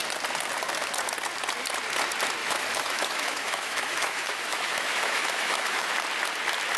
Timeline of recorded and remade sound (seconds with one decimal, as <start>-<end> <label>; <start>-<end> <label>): 0.0-2.4 recorded; 2.4-5.9 remade; 5.9-6.8 recorded